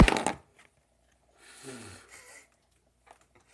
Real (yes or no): yes